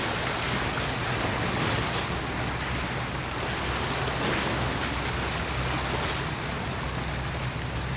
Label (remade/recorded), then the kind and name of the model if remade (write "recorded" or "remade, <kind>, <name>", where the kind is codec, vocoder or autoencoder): recorded